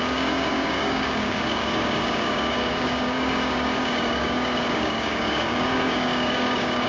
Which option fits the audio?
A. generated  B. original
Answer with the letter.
A